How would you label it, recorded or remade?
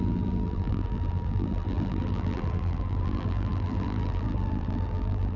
remade